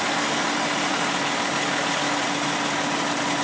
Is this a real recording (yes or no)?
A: yes